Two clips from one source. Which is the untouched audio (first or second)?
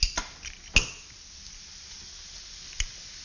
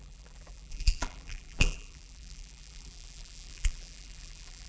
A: first